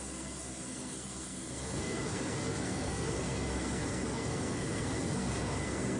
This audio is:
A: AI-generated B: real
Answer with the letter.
A